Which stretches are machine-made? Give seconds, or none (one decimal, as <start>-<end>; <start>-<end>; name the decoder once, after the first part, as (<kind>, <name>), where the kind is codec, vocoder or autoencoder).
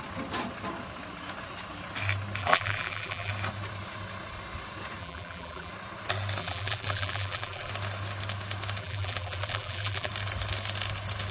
2.4-3.3 (vocoder, BigVGAN v2); 5.0-5.7; 6.4-7.7; 8.8-10.1